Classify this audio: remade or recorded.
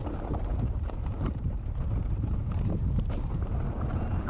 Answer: remade